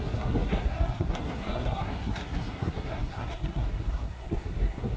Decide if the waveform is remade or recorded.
remade